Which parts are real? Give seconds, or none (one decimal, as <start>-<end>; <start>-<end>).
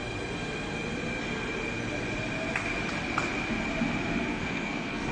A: 0.0-4.3